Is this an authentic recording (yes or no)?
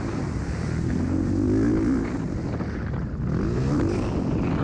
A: yes